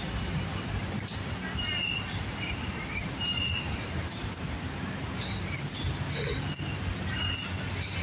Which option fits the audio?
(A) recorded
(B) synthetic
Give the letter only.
A